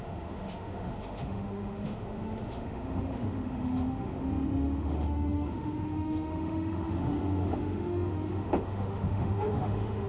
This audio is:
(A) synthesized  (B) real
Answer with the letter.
A